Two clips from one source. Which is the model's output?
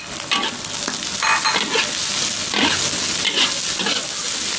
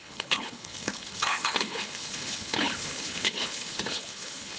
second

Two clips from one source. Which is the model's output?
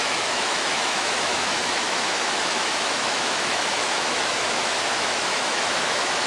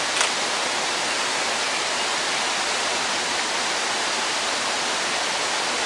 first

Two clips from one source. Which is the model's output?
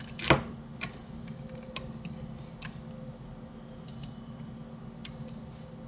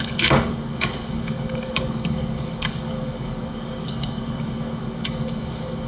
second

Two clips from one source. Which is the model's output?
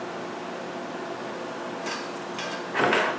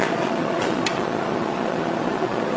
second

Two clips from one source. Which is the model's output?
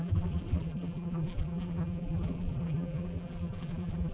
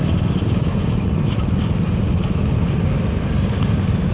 first